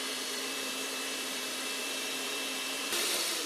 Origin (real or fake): fake